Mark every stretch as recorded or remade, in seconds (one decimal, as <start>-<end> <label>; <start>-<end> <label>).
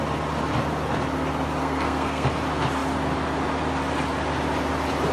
0.0-1.6 recorded; 1.6-2.3 remade; 2.3-5.1 recorded